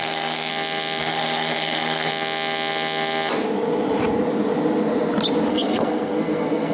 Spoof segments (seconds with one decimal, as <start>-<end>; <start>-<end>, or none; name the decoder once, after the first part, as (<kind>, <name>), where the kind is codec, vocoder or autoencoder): 0.0-0.5 (codec, SNAC); 1.0-2.1; 5.5-6.7